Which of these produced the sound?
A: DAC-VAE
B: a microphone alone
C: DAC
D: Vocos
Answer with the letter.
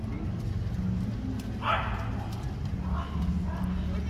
B